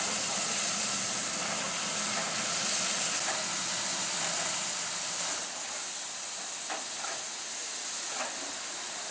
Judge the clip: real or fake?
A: real